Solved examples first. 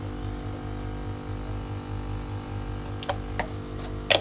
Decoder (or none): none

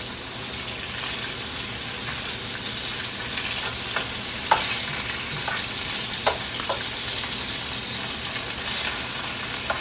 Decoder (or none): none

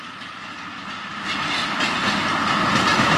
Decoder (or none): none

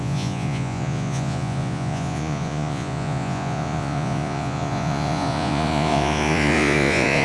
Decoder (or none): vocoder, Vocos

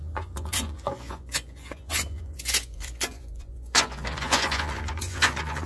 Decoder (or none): vocoder, Vocos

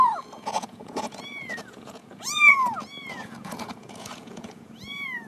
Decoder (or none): vocoder, Vocos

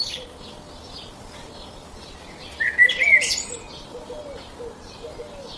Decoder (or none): none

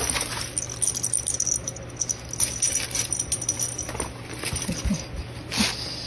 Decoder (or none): none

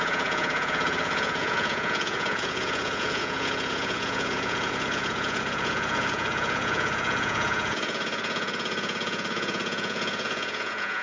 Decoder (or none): vocoder, Vocos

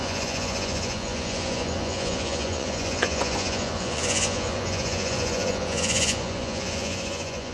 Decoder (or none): vocoder, Vocos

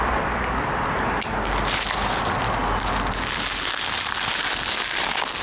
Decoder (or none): none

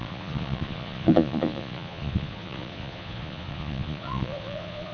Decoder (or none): vocoder, Vocos